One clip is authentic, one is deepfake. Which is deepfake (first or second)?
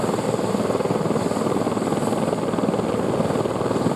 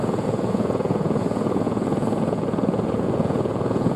second